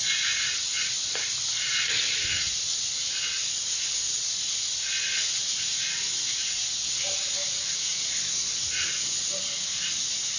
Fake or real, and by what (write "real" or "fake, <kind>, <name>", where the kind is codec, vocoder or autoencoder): real